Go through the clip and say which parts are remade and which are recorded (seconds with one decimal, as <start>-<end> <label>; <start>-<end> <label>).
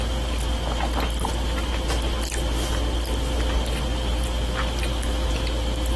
0.0-6.0 recorded